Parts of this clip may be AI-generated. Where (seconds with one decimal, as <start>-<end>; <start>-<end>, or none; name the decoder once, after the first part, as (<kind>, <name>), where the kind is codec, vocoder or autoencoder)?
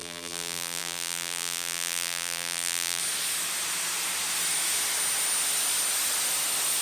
0.0-3.0 (vocoder, BigVGAN v2)